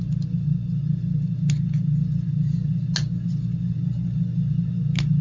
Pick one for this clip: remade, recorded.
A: recorded